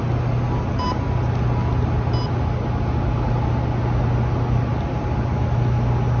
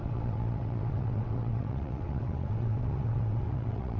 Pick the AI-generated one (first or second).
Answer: second